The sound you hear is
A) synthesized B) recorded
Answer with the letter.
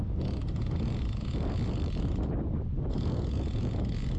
B